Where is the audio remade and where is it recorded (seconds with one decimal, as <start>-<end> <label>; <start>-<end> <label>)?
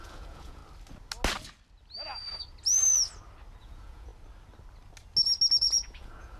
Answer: 0.0-0.6 remade; 0.6-3.6 recorded; 3.6-4.1 remade; 4.1-5.6 recorded; 5.6-6.4 remade